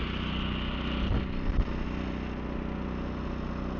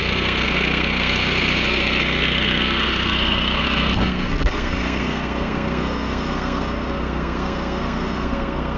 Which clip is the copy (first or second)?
second